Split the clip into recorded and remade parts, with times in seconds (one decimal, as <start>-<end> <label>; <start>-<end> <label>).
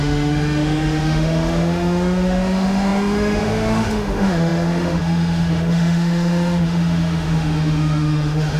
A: 0.0-8.6 remade